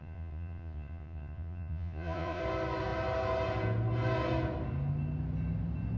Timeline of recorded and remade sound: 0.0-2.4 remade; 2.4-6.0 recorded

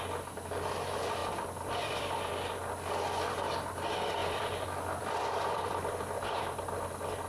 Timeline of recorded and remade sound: 0.0-1.2 recorded; 1.2-2.3 remade; 2.3-4.2 recorded; 4.2-6.6 remade; 6.6-7.3 recorded

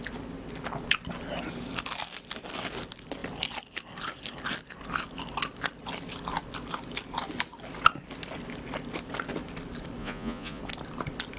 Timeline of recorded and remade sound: 0.0-10.0 recorded; 10.0-10.6 remade; 10.6-11.4 recorded

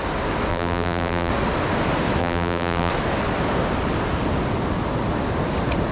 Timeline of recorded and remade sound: 0.0-0.5 recorded; 0.5-1.3 remade; 1.3-2.2 recorded; 2.2-2.9 remade; 2.9-5.9 recorded

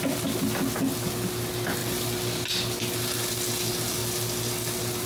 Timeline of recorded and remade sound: 0.0-5.1 recorded